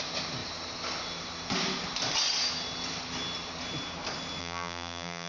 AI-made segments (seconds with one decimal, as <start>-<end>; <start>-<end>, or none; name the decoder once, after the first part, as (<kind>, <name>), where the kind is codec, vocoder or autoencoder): 4.4-5.3 (vocoder, BigVGAN v2)